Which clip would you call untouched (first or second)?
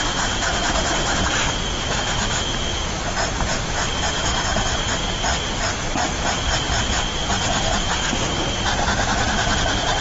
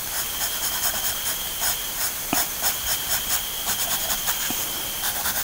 first